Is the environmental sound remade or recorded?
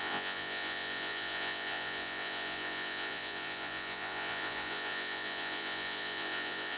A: remade